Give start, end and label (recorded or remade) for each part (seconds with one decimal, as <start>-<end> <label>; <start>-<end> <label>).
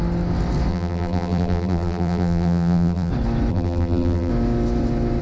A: 0.0-0.7 recorded; 0.7-3.1 remade; 3.1-3.5 recorded; 3.5-4.3 remade; 4.3-5.2 recorded